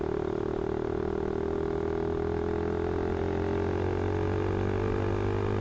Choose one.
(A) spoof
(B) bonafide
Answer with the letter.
B